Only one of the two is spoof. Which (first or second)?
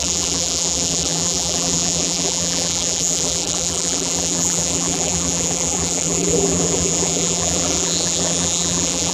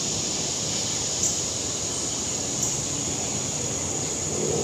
first